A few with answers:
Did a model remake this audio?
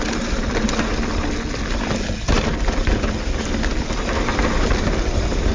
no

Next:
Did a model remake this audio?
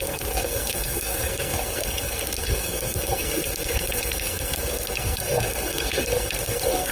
yes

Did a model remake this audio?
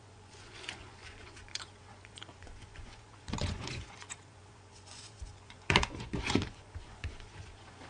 yes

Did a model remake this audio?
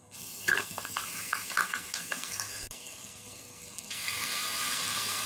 yes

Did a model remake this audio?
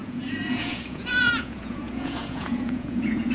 yes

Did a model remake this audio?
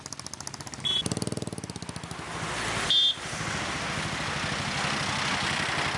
no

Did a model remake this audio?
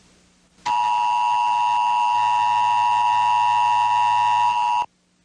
no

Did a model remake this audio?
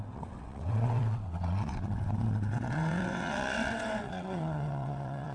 yes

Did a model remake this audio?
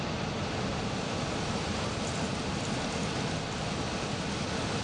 no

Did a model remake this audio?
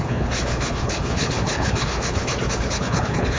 yes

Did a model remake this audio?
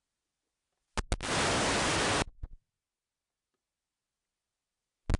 no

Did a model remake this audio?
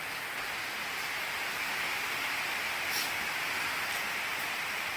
no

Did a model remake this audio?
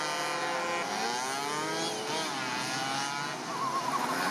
no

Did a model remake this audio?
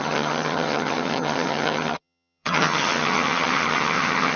yes